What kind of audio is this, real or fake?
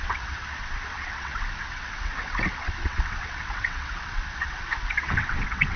fake